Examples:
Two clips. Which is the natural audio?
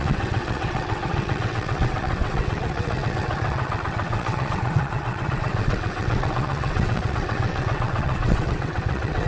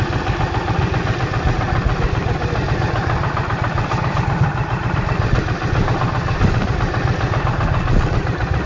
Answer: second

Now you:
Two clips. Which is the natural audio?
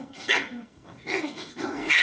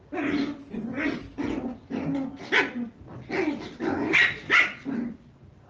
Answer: second